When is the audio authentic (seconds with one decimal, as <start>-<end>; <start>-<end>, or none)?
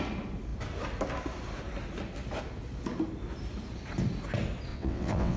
0.0-4.7